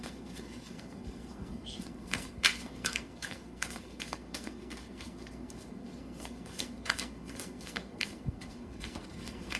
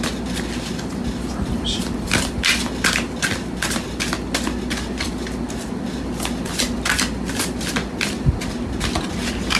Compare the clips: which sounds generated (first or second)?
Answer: first